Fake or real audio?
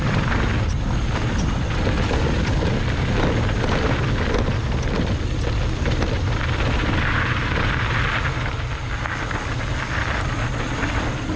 real